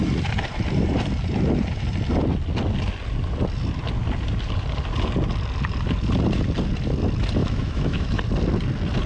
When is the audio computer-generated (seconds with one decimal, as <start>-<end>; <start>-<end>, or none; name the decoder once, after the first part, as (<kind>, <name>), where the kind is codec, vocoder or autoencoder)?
7.4-8.2 (autoencoder, DAC-VAE)